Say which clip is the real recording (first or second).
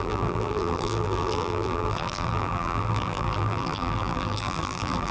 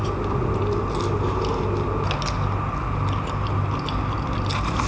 second